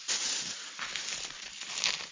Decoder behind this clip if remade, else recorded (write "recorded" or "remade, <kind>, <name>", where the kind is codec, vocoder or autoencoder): recorded